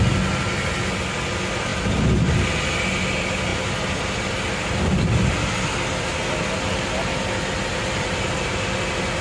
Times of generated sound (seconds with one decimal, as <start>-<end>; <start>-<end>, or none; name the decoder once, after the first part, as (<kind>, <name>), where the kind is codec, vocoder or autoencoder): 1.7-2.5 (vocoder, BigVGAN v2)